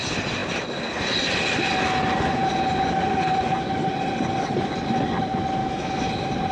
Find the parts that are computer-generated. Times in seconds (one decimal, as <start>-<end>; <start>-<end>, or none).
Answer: 5.6-6.1